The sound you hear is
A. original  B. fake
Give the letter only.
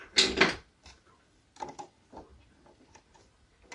A